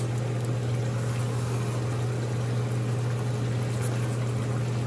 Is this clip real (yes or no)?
yes